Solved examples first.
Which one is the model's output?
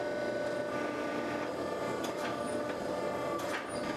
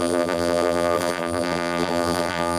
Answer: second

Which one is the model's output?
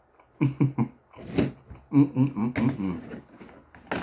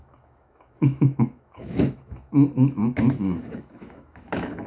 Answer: second